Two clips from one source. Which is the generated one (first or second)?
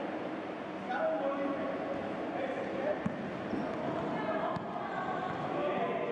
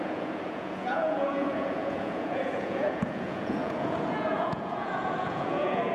second